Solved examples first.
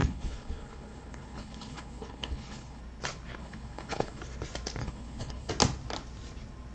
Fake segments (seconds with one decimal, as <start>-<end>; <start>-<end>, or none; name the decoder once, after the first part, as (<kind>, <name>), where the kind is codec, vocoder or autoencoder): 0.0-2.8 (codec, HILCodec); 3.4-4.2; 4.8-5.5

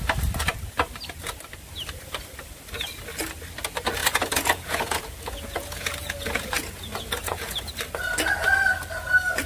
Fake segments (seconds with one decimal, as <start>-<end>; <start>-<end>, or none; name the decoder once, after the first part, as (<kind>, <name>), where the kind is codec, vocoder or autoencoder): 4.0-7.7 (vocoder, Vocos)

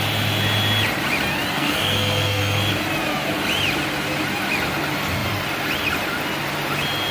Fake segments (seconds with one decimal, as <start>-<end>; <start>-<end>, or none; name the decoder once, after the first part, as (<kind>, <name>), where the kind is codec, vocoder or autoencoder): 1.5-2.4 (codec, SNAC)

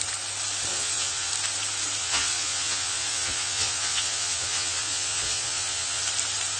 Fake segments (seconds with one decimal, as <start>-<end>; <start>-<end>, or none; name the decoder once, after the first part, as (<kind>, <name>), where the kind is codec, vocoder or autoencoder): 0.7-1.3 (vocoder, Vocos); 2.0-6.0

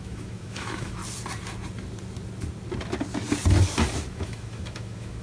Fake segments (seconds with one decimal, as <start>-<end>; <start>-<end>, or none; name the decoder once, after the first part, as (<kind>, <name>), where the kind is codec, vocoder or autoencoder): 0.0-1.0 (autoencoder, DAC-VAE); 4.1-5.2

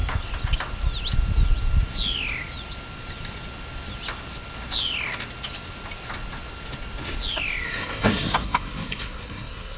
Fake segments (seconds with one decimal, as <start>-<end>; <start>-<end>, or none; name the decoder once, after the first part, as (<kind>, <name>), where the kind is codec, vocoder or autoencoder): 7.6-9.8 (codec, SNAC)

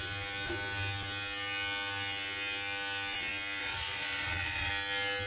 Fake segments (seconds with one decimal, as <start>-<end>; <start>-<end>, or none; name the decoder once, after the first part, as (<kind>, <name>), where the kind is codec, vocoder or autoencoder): 3.6-4.7 (vocoder, Vocos)